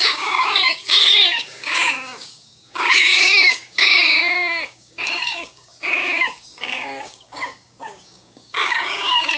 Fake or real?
fake